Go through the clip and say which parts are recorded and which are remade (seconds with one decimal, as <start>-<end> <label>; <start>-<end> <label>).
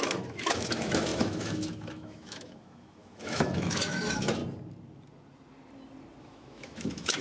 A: 0.0-4.4 remade; 4.4-6.2 recorded; 6.2-7.2 remade